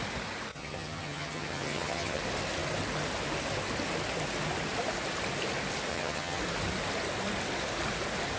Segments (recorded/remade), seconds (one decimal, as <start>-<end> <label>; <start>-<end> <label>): 0.0-0.5 recorded; 0.5-2.2 remade; 2.2-5.9 recorded; 5.9-6.4 remade; 6.4-8.4 recorded